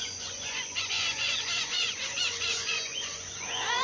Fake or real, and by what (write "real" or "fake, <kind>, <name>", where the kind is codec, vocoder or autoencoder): fake, vocoder, Vocos